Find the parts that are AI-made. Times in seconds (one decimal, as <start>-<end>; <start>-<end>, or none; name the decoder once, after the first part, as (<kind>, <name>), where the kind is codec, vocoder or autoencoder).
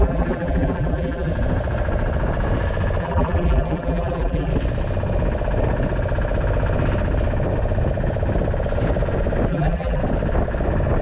0.0-1.3 (vocoder, BigVGAN v2); 3.0-4.5; 9.5-10.0